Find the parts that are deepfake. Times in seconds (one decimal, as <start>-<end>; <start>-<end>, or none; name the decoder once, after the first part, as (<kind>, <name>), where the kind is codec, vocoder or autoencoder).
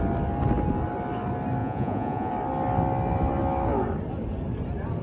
1.6-2.3 (vocoder, Vocos)